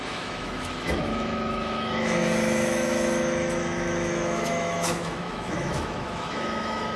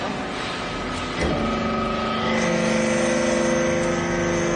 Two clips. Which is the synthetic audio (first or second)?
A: first